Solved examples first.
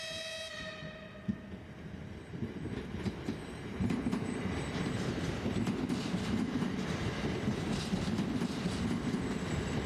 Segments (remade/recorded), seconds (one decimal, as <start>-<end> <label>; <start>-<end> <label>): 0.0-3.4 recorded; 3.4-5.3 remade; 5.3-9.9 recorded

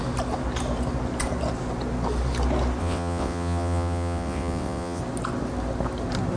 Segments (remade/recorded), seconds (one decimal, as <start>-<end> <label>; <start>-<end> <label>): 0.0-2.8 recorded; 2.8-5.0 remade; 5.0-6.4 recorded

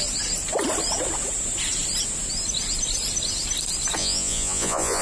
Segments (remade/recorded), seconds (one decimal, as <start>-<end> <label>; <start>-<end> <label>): 0.0-4.0 recorded; 4.0-5.0 remade

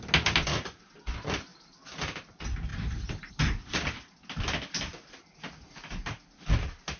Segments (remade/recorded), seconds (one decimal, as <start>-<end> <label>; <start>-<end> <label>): 0.0-7.0 recorded

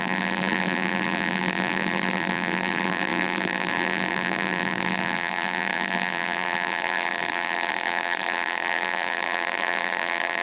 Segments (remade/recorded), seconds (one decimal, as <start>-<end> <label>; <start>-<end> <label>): 0.0-10.4 remade

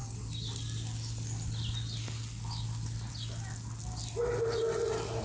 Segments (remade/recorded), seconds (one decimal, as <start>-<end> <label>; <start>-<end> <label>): 0.0-5.2 recorded

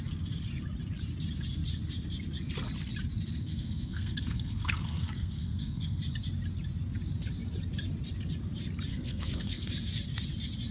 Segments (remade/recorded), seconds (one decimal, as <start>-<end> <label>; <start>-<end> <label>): 0.0-3.4 recorded; 3.4-6.0 remade; 6.0-8.9 recorded; 8.9-9.7 remade; 9.7-10.7 recorded